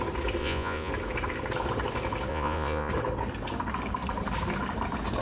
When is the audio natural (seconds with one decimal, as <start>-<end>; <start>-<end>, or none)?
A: 0.0-0.4; 0.9-2.3; 2.9-5.2